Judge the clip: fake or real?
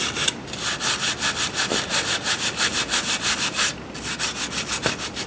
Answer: fake